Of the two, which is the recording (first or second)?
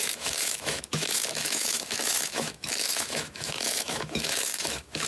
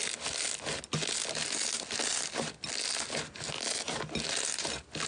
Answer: second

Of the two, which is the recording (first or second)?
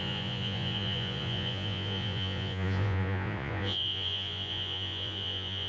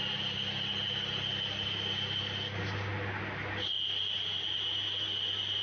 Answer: second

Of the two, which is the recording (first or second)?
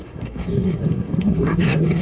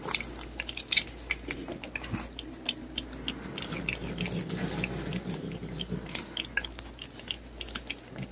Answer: second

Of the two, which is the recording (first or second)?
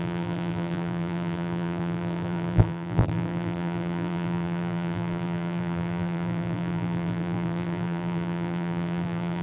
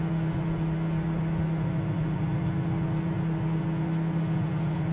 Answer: second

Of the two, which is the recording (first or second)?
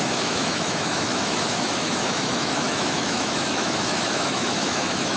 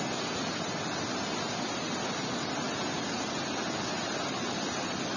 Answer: second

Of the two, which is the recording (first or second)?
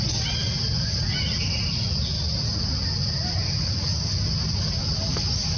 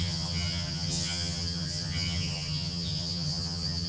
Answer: first